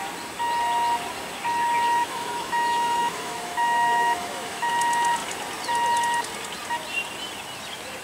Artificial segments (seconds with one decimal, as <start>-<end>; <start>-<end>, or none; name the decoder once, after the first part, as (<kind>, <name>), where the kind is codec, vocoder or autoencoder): 2.0-4.7 (autoencoder, DAC-VAE)